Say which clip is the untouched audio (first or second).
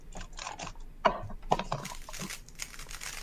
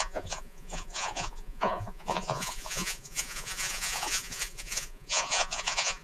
first